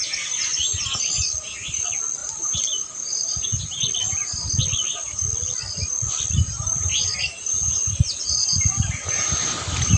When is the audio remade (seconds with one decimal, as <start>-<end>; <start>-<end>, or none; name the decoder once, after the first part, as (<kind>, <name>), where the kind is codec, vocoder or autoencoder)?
2.2-3.6 (vocoder, BigVGAN v2); 8.1-9.1